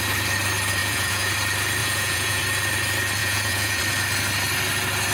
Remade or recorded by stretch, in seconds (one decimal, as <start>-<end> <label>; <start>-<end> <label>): 0.0-0.8 recorded; 0.8-1.3 remade; 1.3-1.8 recorded; 1.8-2.4 remade; 2.4-3.2 recorded; 3.2-3.8 remade; 3.8-5.1 recorded